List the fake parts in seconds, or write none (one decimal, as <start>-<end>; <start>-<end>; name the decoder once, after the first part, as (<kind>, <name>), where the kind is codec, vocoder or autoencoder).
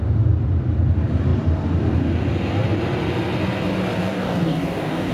4.0-5.1 (codec, DAC)